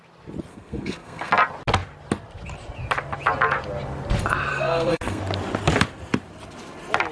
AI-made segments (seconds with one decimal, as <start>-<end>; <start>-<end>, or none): 0.5-1.3; 4.5-5.2